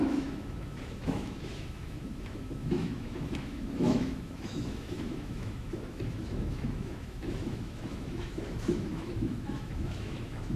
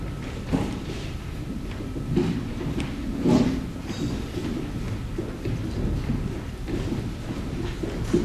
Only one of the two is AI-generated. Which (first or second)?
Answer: first